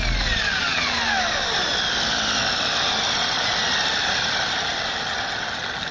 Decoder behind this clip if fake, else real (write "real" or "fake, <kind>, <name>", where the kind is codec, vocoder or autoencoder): real